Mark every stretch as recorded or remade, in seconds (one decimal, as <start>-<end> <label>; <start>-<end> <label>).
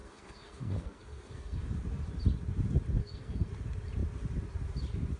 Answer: 0.0-1.6 remade; 1.6-3.0 recorded; 3.0-3.5 remade; 3.5-5.2 recorded